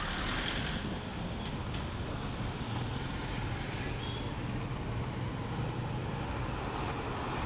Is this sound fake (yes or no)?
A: no